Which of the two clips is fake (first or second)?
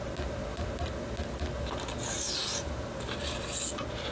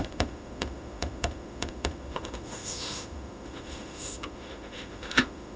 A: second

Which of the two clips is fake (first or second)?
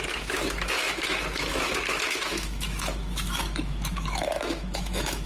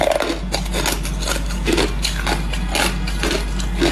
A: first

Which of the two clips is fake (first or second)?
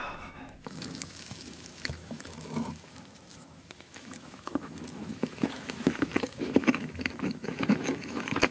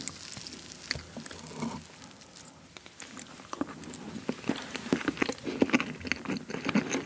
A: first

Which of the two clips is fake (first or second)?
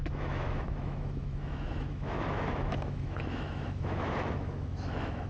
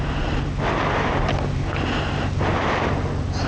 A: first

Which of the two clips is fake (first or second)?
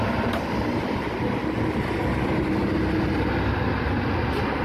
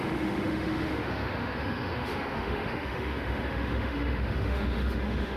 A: second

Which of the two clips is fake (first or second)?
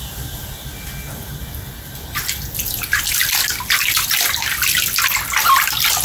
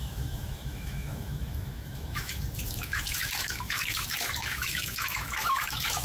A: second